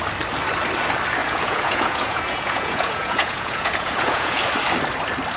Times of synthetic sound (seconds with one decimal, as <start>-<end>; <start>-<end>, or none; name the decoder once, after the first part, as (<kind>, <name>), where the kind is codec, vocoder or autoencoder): 1.2-4.4 (vocoder, Vocos)